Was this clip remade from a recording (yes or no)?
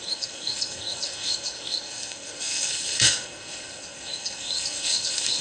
yes